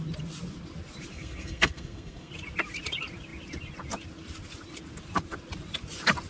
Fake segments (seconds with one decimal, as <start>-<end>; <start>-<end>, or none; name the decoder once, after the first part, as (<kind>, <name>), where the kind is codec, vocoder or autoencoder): 1.1-2.3 (codec, SNAC)